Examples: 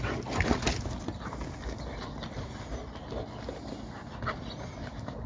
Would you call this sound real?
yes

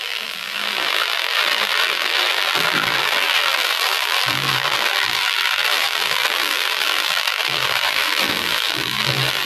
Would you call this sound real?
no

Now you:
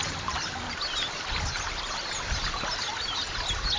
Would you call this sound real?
yes